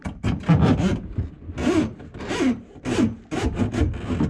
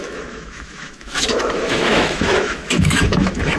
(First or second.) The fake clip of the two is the second